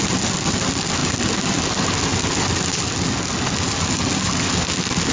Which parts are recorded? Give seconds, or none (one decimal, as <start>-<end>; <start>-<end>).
0.0-5.1